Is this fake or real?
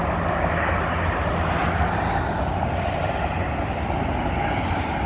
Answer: real